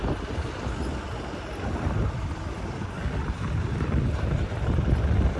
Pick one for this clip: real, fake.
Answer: real